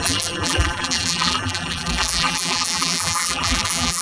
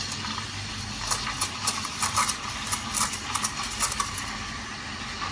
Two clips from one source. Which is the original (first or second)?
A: second